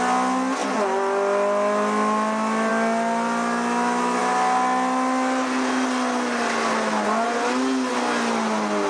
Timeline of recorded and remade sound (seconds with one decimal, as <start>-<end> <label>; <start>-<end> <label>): 0.0-8.9 recorded